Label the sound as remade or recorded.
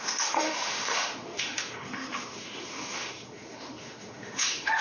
remade